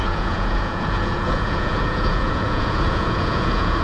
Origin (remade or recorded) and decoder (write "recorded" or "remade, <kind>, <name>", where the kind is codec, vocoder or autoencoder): remade, vocoder, Vocos